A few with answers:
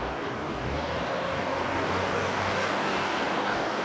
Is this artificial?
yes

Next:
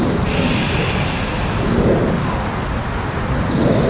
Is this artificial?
no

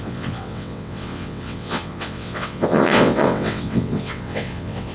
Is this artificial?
yes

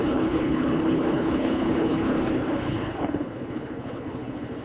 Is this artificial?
yes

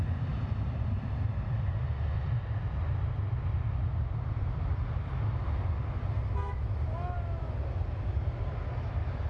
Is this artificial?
no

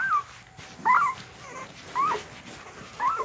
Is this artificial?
no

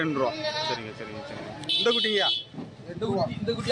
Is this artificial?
no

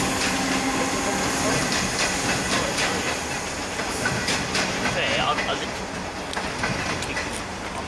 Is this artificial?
no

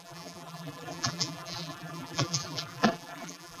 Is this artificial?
yes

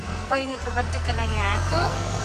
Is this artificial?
yes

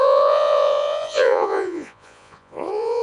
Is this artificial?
yes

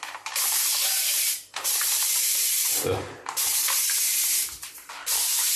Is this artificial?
yes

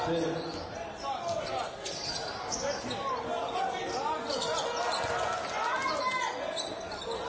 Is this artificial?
no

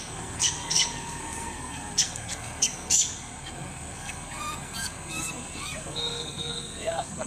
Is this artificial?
yes